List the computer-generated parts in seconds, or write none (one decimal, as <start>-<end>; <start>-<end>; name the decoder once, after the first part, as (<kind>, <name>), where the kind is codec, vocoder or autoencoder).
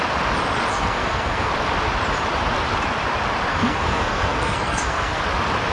0.7-1.5 (codec, SNAC); 3.5-5.2